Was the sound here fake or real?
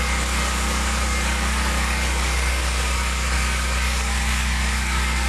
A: fake